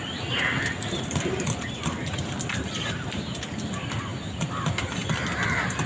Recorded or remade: recorded